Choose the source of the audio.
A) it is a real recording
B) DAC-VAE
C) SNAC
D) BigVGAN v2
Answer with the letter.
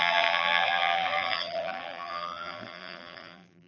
D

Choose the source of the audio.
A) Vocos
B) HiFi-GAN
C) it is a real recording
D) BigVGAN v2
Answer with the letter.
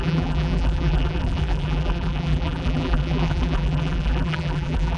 D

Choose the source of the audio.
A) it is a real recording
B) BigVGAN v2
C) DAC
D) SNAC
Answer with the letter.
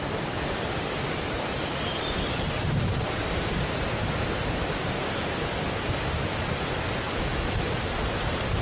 B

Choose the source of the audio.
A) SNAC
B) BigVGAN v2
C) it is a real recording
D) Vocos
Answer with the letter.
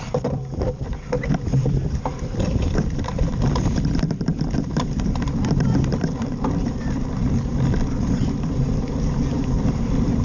B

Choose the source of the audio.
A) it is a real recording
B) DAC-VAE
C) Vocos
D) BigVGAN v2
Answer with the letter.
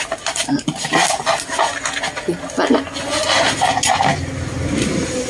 A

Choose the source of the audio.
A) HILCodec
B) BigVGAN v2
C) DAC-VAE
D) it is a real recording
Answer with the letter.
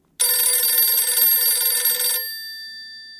D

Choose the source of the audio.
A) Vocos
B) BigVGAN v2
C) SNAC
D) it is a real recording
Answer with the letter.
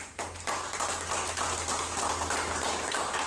D